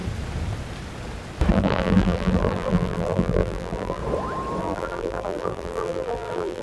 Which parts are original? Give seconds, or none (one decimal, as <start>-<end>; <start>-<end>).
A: 0.0-1.5; 4.0-4.6